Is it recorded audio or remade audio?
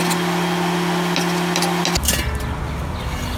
recorded